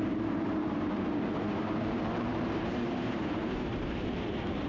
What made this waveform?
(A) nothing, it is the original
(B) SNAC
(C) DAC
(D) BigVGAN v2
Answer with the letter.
D